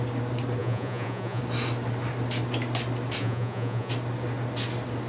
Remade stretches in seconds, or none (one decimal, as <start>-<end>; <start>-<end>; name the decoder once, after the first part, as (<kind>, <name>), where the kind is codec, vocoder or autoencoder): 0.6-1.4 (vocoder, Vocos); 3.2-3.9